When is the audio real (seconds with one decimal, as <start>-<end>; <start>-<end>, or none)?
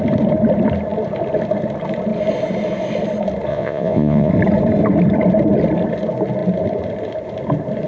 0.0-3.5; 4.3-7.9